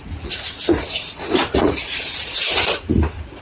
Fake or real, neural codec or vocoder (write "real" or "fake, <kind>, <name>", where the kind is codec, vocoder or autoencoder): fake, vocoder, Vocos